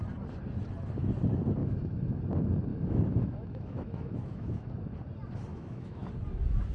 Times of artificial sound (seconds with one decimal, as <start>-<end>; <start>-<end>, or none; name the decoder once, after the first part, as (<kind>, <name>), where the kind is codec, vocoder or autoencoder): 1.6-2.2 (autoencoder, DAC-VAE); 2.7-4.7; 5.5-6.1